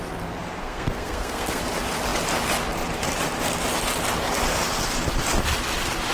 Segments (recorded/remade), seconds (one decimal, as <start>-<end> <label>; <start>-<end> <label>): 0.0-0.6 recorded; 0.6-1.6 remade; 1.6-6.1 recorded